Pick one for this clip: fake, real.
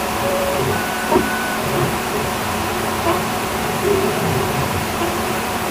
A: fake